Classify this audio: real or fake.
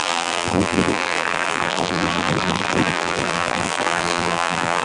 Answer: fake